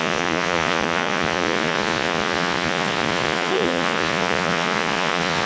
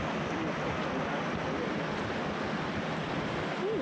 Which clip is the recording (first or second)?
second